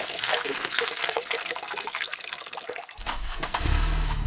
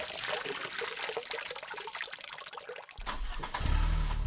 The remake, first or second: first